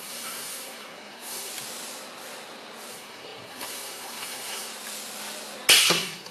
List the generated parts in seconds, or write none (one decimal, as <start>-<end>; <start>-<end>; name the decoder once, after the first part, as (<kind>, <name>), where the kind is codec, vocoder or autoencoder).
0.0-1.5 (codec, SNAC); 2.9-4.7; 5.8-6.3